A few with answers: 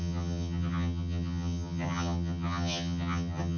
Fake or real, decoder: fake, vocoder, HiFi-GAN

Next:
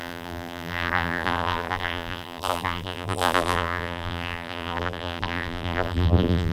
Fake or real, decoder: fake, vocoder, BigVGAN v2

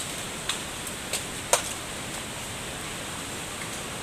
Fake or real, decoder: real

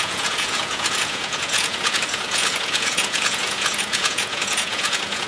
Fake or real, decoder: fake, vocoder, Vocos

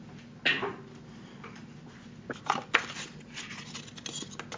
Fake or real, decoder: real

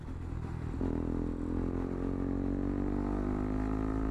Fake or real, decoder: real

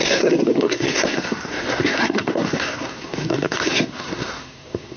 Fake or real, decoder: fake, codec, SNAC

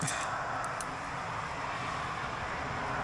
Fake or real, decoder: real